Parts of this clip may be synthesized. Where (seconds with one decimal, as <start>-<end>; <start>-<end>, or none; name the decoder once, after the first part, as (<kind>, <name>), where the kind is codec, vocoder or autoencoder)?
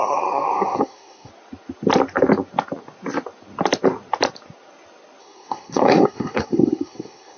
0.0-1.3 (codec, SNAC); 5.2-7.4